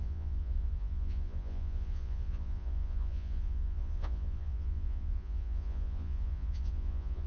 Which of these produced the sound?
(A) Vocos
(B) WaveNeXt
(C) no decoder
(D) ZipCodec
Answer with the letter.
A